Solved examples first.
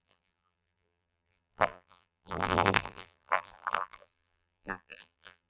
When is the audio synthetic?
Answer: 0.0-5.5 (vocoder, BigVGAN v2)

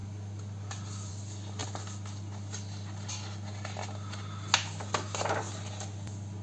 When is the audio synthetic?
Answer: none

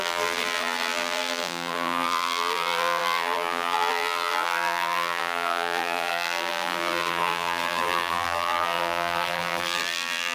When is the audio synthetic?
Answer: 0.0-10.3 (vocoder, BigVGAN v2)

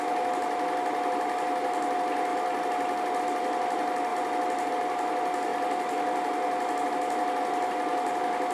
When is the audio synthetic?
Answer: none

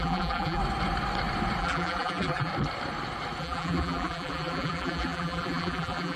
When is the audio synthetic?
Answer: 0.0-0.6 (vocoder, BigVGAN v2); 1.6-2.5; 3.4-6.2

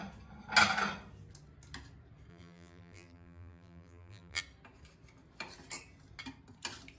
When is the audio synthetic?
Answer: 2.3-4.4 (vocoder, BigVGAN v2)

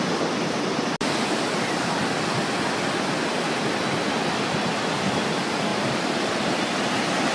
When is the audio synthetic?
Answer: 5.7-6.6 (vocoder, BigVGAN v2)